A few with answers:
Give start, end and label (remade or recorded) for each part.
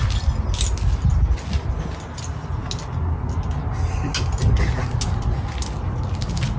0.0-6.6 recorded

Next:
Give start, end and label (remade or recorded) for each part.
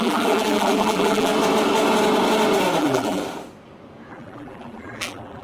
0.0-1.3 remade; 1.3-2.8 recorded; 2.8-3.2 remade; 3.2-4.1 recorded; 4.1-5.4 remade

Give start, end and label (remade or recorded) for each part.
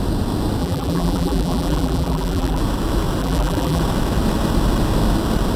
0.0-0.6 recorded; 0.6-2.6 remade; 2.6-3.2 recorded; 3.2-3.8 remade; 3.8-5.6 recorded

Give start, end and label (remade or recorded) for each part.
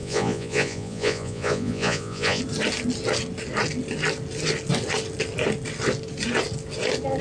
0.0-2.4 remade; 2.4-7.2 recorded